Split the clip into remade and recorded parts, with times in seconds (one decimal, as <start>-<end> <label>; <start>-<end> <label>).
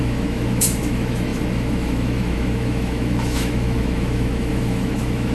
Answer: 0.0-5.3 remade